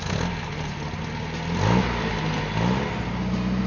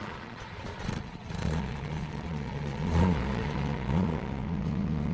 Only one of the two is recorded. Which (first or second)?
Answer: first